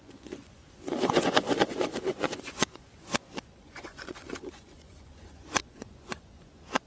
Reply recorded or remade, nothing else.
remade